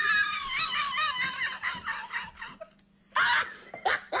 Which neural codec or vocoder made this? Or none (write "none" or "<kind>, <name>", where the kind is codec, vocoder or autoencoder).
none